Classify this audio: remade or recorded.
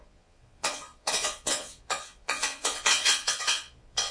remade